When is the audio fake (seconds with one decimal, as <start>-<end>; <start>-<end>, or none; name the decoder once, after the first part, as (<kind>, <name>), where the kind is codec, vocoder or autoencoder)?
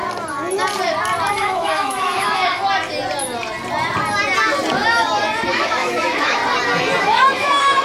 1.3-2.6 (autoencoder, DAC-VAE); 5.5-6.4; 7.0-7.8